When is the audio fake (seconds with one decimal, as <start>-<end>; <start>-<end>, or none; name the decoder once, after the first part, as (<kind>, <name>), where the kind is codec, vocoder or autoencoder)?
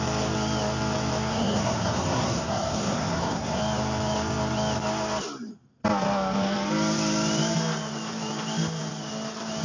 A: 1.3-3.6 (codec, SNAC)